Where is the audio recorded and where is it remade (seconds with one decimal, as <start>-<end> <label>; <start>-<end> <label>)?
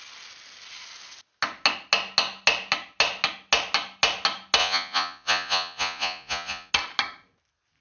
0.0-4.6 recorded; 4.6-6.7 remade; 6.7-7.8 recorded